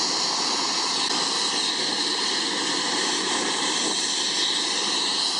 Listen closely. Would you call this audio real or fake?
real